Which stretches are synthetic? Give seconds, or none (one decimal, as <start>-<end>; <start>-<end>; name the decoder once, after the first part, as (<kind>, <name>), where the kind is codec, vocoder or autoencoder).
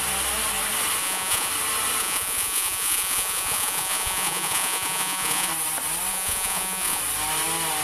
1.0-1.5 (vocoder, Vocos); 2.0-5.5; 6.1-7.0